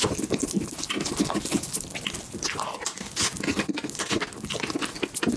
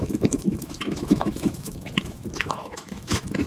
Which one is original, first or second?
first